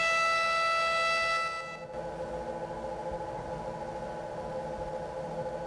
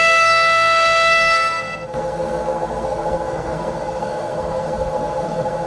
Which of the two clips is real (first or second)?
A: first